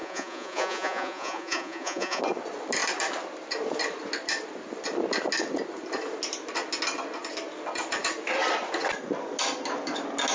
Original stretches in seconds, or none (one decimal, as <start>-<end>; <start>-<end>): 2.2-10.3